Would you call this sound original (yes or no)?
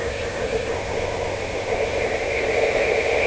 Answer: no